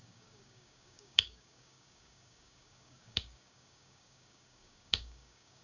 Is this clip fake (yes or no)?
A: yes